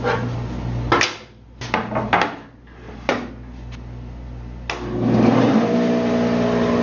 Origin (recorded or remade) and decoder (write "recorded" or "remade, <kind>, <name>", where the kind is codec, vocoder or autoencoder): recorded